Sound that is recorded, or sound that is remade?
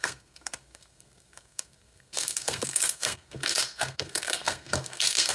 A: remade